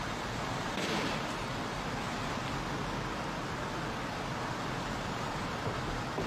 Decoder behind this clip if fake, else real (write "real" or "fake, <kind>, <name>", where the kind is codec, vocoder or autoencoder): fake, vocoder, BigVGAN v2